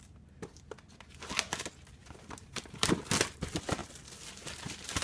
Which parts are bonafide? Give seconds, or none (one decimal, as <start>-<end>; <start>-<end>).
0.0-2.0; 2.9-5.0

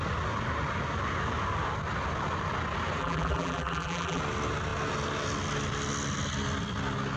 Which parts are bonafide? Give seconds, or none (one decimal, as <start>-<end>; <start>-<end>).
0.0-3.0; 4.2-7.2

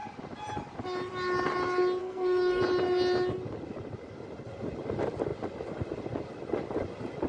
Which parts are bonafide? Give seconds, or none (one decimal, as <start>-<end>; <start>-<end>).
0.0-2.0; 2.6-7.3

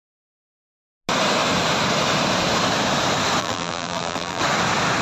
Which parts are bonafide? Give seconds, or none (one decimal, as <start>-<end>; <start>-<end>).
0.0-3.4; 4.4-5.0

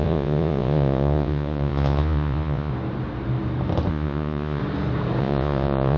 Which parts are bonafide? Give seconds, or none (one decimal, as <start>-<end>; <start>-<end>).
2.7-3.9; 4.6-5.2

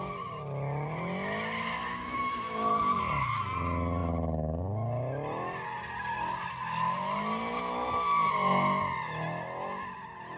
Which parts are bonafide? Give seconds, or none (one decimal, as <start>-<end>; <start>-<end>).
0.0-1.8; 3.0-10.4

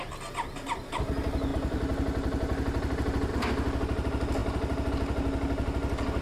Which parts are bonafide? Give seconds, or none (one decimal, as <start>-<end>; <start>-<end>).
0.0-6.2

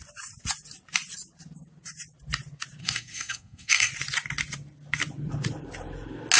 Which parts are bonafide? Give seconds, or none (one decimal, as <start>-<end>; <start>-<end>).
0.0-2.8; 3.9-6.4